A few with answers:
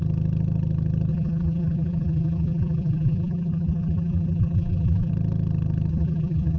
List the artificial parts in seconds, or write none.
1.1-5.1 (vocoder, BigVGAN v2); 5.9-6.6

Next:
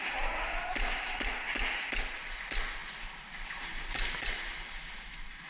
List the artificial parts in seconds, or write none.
none

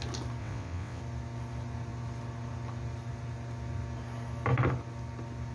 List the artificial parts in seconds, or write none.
0.4-1.0 (vocoder, WaveNeXt)

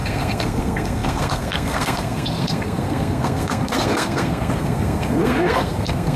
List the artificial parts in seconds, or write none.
0.0-6.2 (codec, SNAC)

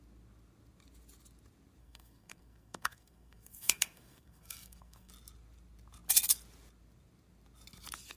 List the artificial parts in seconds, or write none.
1.8-5.1 (codec, SNAC)

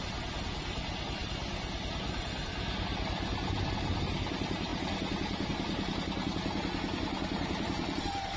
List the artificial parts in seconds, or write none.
none

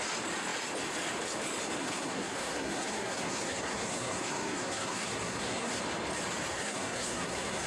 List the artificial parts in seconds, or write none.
1.8-5.8 (codec, SNAC); 6.5-7.7